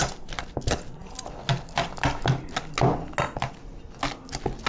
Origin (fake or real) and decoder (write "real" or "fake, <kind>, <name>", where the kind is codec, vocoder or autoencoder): real